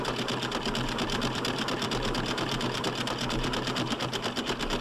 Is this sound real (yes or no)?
no